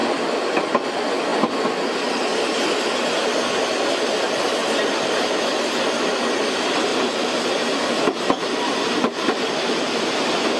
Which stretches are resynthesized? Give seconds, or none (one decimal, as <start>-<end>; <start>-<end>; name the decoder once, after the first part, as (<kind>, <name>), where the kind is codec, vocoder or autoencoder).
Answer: 4.6-5.2 (vocoder, BigVGAN v2); 6.9-10.0